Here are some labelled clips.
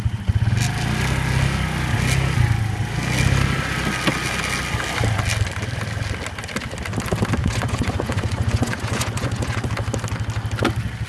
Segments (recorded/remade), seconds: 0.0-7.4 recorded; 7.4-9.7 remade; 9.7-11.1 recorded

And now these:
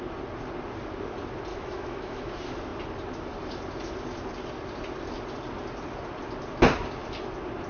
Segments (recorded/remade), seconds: 0.0-1.5 recorded; 1.5-2.3 remade; 2.3-7.7 recorded

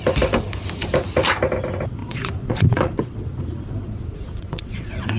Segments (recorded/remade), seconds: 0.0-2.0 recorded; 2.0-5.2 remade

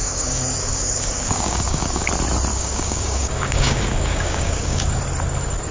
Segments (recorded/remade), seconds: 0.0-2.1 remade; 2.1-2.5 recorded; 2.5-5.0 remade; 5.0-5.7 recorded

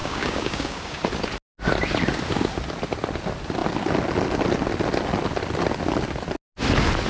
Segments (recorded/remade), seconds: 0.0-1.0 remade; 1.0-7.1 recorded

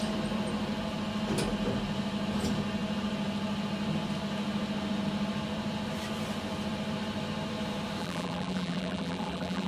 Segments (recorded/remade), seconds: 0.0-8.0 recorded; 8.0-9.7 remade

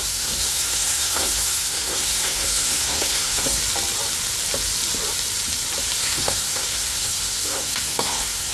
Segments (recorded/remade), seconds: 0.0-3.6 remade; 3.6-6.0 recorded; 6.0-8.5 remade

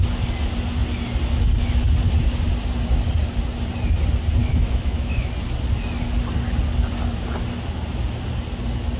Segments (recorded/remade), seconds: 0.0-4.4 recorded; 4.4-5.3 remade; 5.3-9.0 recorded